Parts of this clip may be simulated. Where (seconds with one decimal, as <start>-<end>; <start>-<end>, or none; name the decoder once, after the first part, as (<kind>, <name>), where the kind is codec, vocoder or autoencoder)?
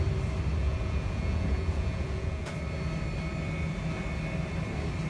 0.6-2.5 (vocoder, Vocos)